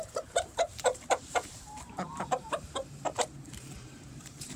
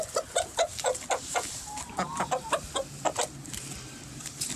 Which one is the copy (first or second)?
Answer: first